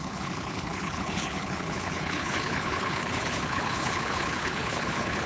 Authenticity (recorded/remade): remade